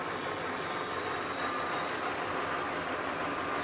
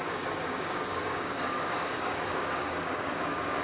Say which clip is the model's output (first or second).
second